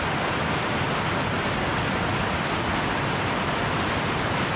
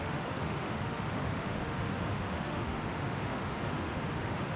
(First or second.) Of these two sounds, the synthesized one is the second